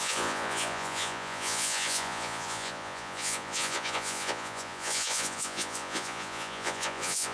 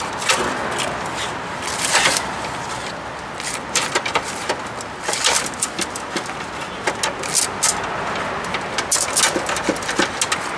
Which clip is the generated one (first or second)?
first